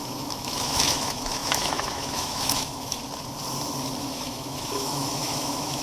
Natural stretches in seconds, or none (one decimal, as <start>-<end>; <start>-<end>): 3.0-4.0